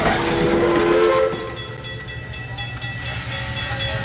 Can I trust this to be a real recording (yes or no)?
yes